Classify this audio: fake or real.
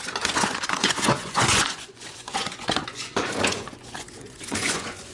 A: fake